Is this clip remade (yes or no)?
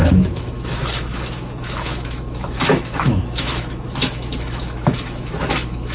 yes